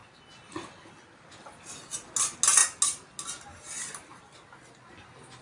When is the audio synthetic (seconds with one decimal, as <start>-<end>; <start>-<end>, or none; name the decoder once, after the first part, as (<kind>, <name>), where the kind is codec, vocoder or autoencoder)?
none